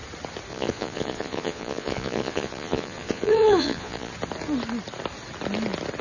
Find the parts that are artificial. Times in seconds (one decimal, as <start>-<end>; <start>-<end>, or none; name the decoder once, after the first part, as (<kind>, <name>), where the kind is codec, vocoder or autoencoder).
0.5-4.1 (vocoder, Vocos)